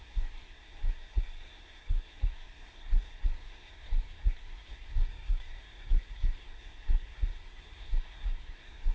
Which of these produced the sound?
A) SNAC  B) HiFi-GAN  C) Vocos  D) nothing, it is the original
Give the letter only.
A